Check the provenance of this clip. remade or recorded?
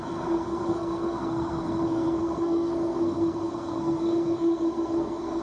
remade